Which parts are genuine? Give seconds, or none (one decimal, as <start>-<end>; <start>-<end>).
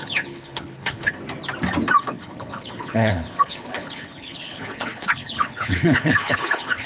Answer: 1.2-2.0